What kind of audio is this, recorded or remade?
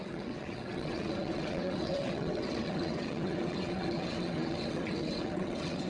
remade